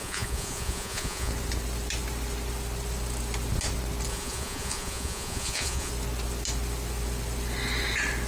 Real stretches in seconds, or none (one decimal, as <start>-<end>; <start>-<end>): 1.3-4.1; 5.9-8.3